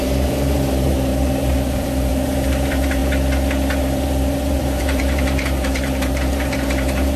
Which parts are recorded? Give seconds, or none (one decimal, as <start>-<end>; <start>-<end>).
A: 3.0-3.8